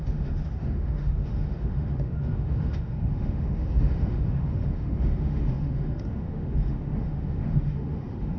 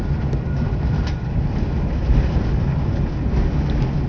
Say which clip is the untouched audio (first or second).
second